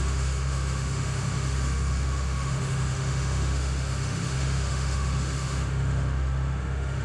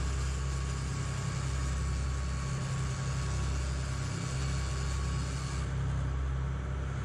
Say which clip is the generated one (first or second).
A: first